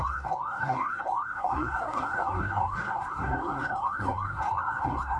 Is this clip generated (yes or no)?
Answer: yes